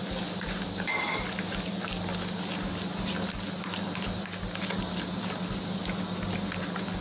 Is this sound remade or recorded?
recorded